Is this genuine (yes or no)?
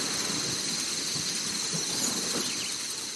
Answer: yes